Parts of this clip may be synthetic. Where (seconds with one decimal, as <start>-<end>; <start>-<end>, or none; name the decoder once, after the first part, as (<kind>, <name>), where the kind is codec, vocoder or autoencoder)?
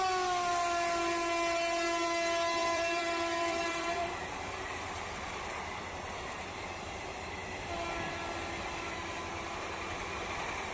2.6-5.3 (vocoder, BigVGAN v2)